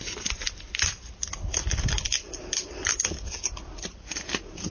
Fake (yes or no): no